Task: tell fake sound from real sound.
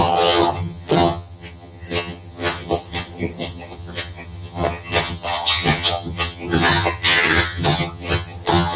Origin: fake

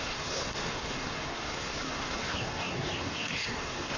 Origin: fake